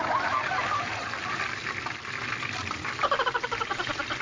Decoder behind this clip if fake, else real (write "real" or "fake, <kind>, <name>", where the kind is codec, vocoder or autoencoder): real